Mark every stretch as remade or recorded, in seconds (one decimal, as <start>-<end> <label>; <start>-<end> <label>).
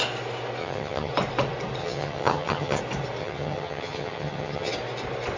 0.0-0.6 recorded; 0.6-1.1 remade; 1.1-1.8 recorded; 1.8-2.8 remade; 2.8-3.2 recorded; 3.2-4.7 remade; 4.7-5.4 recorded